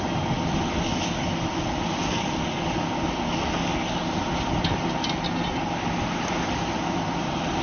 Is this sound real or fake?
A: real